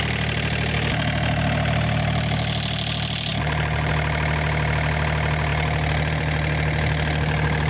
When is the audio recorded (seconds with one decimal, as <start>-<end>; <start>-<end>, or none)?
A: 0.0-3.3; 3.9-7.7